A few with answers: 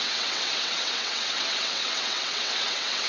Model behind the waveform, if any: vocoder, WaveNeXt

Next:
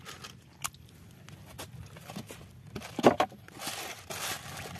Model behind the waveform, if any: none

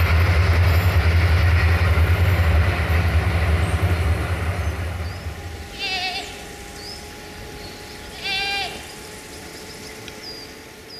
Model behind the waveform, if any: none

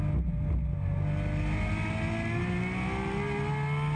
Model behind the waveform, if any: none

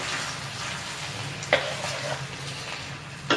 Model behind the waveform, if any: none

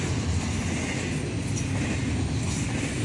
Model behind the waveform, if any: none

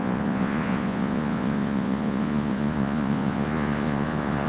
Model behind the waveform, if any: vocoder, Vocos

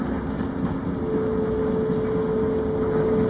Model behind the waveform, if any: none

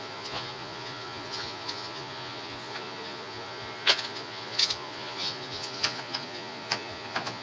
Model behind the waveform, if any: vocoder, Vocos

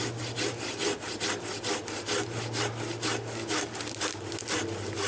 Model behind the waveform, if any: none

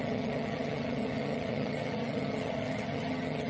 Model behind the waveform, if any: vocoder, HiFi-GAN